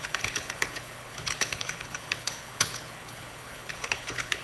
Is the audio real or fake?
fake